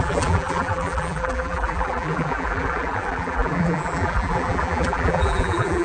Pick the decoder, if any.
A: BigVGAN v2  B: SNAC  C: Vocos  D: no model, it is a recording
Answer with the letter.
A